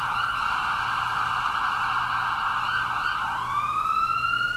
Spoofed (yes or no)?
no